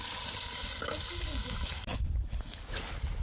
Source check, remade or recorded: recorded